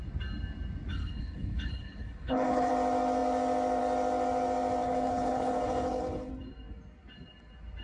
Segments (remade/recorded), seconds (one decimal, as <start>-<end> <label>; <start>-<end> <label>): 0.0-0.9 recorded; 0.9-2.7 remade; 2.7-4.8 recorded; 4.8-6.3 remade; 6.3-7.8 recorded